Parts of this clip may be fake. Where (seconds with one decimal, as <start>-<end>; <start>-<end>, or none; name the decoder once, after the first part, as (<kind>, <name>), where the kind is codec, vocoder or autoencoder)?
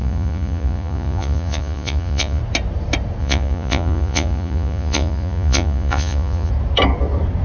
0.0-2.4 (vocoder, Vocos); 3.2-6.5